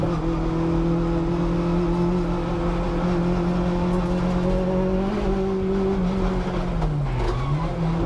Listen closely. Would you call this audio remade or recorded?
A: recorded